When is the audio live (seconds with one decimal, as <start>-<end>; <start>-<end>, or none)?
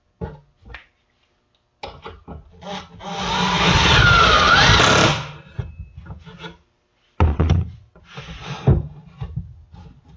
0.0-7.3; 8.1-10.2